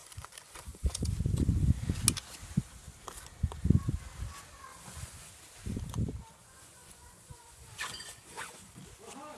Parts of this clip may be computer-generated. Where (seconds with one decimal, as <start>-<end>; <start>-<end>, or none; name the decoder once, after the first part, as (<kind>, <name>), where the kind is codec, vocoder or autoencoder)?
0.0-1.1 (vocoder, Vocos); 4.7-5.3; 6.4-8.8